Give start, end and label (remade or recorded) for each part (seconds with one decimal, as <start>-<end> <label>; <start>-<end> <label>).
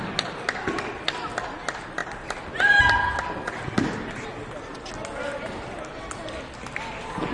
0.0-7.3 recorded